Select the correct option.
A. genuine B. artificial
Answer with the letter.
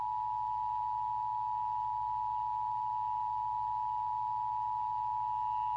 A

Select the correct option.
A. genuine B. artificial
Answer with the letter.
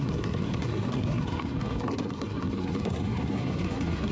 B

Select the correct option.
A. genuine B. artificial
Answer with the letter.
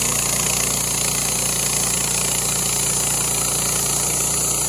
A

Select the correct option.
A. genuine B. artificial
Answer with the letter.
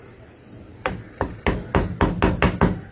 A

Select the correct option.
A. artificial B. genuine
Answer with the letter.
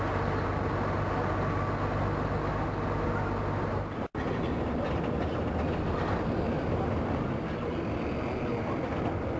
B